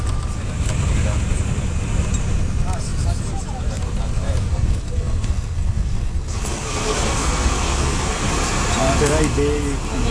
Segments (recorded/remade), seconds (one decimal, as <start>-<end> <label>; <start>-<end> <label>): 0.0-4.5 recorded; 4.5-8.3 remade; 8.3-10.1 recorded